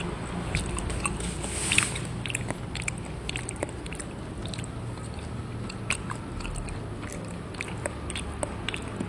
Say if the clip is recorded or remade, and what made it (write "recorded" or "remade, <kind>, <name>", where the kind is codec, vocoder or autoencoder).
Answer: recorded